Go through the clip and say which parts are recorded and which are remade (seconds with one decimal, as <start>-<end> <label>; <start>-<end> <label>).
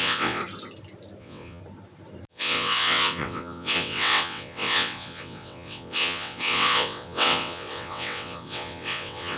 0.0-0.4 remade; 0.4-1.2 recorded; 1.2-1.6 remade; 1.6-2.3 recorded; 2.3-9.4 remade